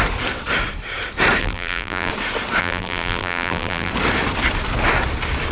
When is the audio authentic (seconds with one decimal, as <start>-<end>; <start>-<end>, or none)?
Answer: 0.0-1.4; 2.1-2.6; 3.9-5.5